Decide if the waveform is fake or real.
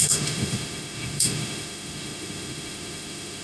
fake